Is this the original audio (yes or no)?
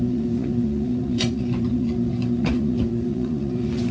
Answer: no